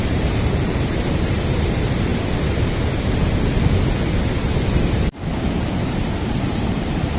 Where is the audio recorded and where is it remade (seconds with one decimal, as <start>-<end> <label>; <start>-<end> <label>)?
0.0-2.1 remade; 2.1-6.4 recorded; 6.4-7.2 remade